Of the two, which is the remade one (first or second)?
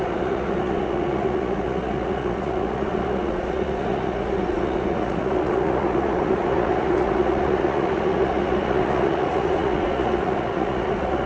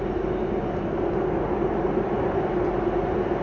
first